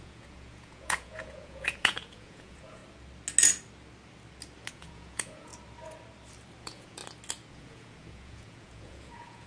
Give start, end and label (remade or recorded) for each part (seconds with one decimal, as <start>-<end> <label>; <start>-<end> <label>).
0.0-2.8 remade; 2.8-4.7 recorded; 4.7-5.5 remade; 5.5-6.6 recorded; 6.6-7.0 remade; 7.0-7.5 recorded; 7.5-9.5 remade